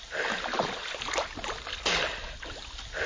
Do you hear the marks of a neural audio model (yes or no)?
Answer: no